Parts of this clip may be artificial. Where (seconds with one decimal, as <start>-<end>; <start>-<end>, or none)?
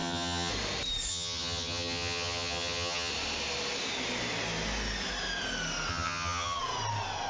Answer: 0.0-0.5; 1.1-3.1; 5.9-6.6